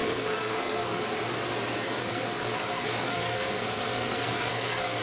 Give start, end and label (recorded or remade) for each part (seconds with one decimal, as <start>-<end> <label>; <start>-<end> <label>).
0.0-1.0 remade; 1.0-2.0 recorded; 2.0-5.0 remade